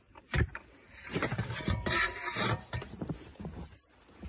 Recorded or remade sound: remade